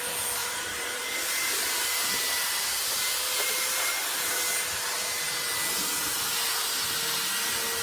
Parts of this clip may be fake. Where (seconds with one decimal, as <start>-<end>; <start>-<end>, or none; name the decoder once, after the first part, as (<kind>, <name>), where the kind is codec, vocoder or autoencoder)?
0.4-4.3 (vocoder, BigVGAN v2)